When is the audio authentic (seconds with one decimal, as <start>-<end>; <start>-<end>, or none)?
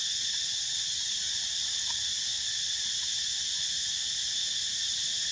1.3-5.3